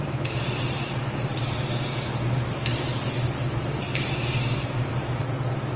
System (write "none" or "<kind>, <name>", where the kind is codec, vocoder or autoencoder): vocoder, BigVGAN v2